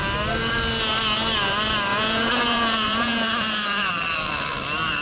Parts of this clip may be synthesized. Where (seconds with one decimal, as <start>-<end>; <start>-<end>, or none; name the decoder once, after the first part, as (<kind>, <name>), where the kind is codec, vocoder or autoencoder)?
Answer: 1.9-3.9 (vocoder, Vocos)